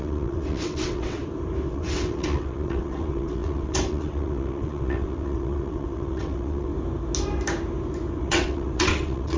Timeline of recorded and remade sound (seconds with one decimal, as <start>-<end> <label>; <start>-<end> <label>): 0.0-1.2 remade; 1.2-1.7 recorded; 1.7-6.7 remade; 6.7-8.2 recorded; 8.2-9.4 remade